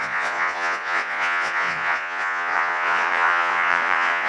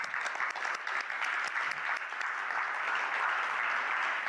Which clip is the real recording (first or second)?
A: second